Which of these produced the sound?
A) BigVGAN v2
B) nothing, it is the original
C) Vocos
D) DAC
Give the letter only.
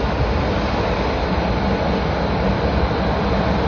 B